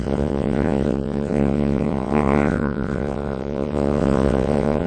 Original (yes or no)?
no